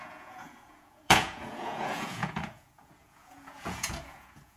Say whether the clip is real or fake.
fake